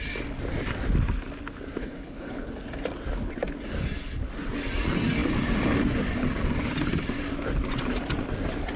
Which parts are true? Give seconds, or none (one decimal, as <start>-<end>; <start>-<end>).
0.0-1.8; 2.5-8.8